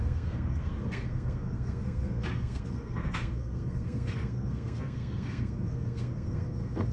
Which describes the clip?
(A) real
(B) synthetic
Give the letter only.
B